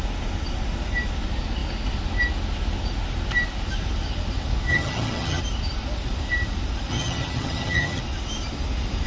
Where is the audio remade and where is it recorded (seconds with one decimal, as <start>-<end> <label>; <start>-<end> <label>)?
0.0-4.7 recorded; 4.7-5.4 remade; 5.4-6.9 recorded; 6.9-8.0 remade; 8.0-9.1 recorded